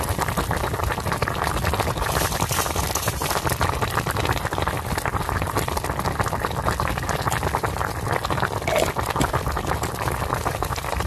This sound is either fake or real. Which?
real